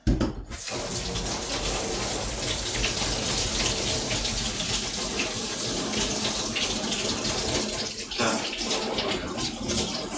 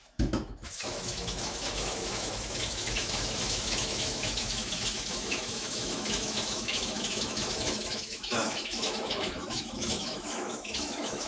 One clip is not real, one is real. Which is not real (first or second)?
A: second